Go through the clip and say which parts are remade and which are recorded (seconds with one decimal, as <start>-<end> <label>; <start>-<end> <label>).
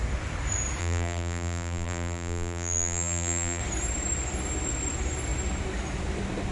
0.0-0.8 recorded; 0.8-3.6 remade; 3.6-6.5 recorded